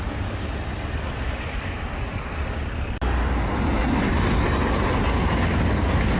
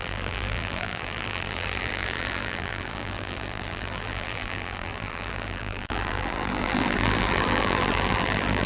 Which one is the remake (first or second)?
second